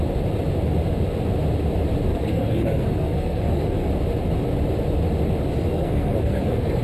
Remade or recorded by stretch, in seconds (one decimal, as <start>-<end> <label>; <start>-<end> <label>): 0.0-2.1 recorded; 2.1-3.9 remade; 3.9-5.7 recorded; 5.7-6.8 remade